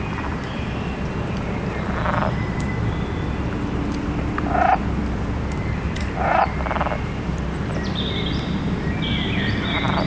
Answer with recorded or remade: remade